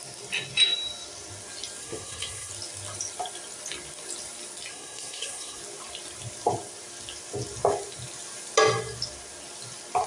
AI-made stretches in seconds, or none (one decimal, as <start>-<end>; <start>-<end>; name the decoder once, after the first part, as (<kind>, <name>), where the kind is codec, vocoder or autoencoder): 1.8-2.5 (codec, SNAC); 4.7-5.6